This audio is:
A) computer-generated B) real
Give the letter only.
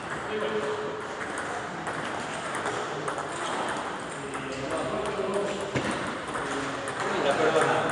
B